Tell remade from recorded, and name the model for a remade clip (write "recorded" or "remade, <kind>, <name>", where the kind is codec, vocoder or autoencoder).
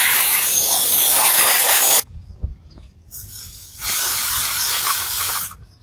remade, codec, DAC